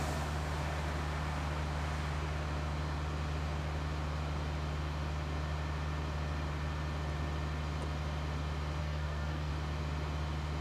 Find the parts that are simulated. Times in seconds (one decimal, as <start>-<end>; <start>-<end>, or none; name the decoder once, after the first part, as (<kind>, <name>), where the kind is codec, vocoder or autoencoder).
8.8-9.5 (codec, SNAC)